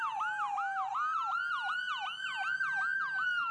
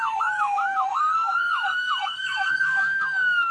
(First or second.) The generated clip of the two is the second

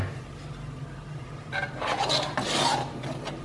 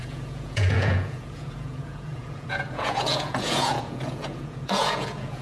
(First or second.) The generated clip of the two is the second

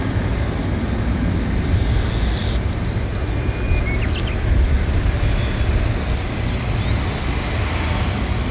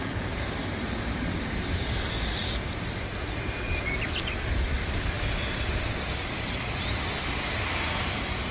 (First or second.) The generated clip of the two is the second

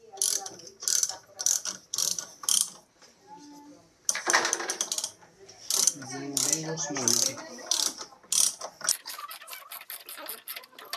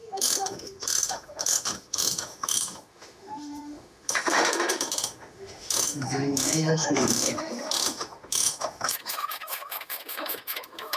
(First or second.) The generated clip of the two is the second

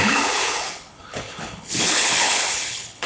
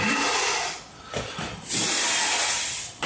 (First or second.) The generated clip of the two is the first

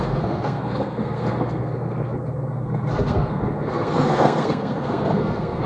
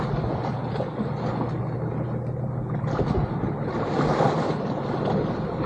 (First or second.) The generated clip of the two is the first